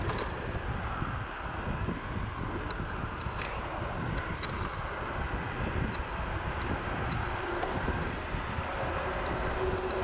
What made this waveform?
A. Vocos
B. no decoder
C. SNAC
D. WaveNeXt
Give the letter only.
B